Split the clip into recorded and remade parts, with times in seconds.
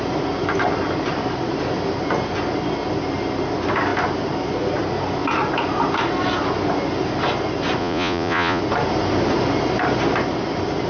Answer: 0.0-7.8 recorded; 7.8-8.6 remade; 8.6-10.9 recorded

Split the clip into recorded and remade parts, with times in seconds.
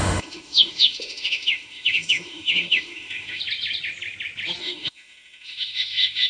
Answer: 0.0-3.4 remade; 3.4-4.6 recorded; 4.6-6.3 remade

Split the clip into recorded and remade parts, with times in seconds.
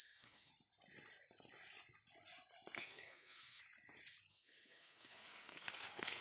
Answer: 0.0-0.5 remade; 0.5-2.8 recorded; 2.8-3.6 remade; 3.6-4.3 recorded; 4.3-6.2 remade